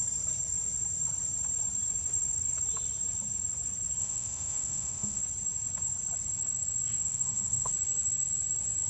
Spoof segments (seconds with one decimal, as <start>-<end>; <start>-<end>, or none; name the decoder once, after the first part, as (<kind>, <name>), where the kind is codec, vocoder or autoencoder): 4.0-5.2 (autoencoder, DAC-VAE); 7.0-7.7

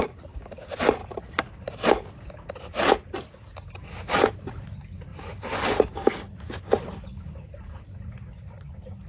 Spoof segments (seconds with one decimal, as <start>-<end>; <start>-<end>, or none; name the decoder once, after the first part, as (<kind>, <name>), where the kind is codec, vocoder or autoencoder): none